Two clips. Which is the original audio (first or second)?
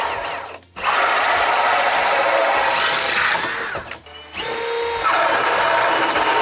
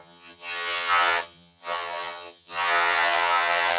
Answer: first